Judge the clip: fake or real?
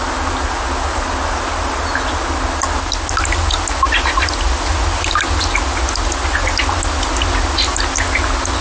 real